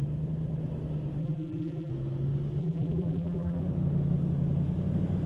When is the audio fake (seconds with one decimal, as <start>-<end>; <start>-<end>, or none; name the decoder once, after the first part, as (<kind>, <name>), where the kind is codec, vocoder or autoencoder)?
1.2-1.9 (vocoder, BigVGAN v2); 2.6-3.6